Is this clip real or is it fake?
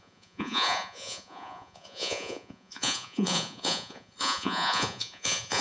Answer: fake